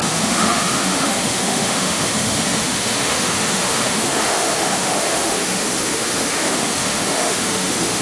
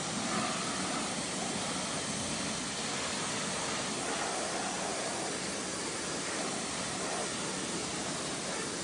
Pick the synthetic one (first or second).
first